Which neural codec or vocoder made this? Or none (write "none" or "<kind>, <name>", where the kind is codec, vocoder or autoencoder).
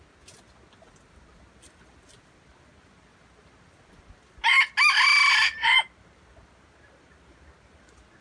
none